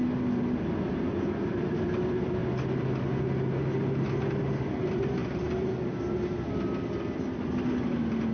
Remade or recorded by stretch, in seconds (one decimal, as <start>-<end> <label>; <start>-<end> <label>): 0.0-8.3 recorded